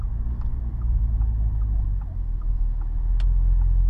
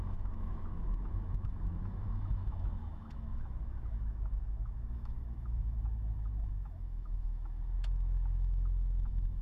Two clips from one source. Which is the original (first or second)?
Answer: first